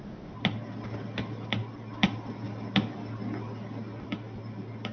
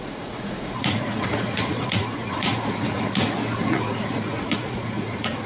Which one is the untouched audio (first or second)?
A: first